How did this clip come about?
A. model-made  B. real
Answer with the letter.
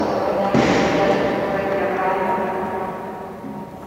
B